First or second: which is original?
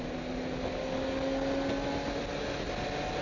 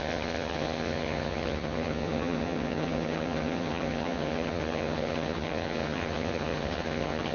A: first